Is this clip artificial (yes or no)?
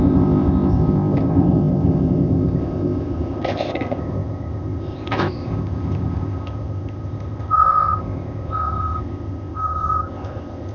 yes